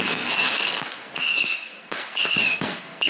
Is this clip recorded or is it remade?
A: remade